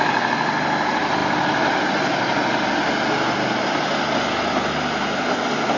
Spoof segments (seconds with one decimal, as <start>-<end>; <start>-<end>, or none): none